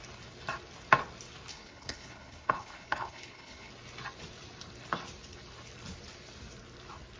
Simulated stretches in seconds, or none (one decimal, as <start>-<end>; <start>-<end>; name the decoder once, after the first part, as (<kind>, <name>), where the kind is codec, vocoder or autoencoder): 1.5-3.7 (codec, HILCodec)